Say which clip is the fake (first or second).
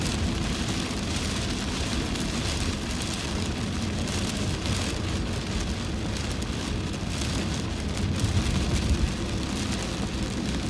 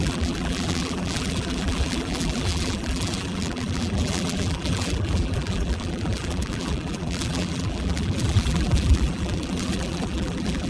second